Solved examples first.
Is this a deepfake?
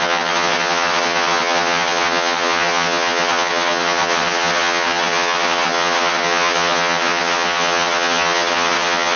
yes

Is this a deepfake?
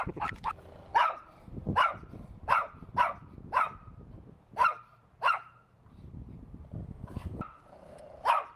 yes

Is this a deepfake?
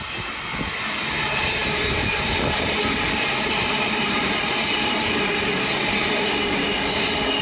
no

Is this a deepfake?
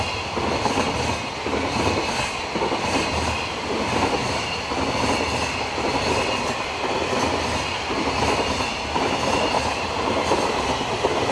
no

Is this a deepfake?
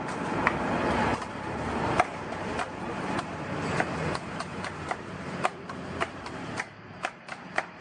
yes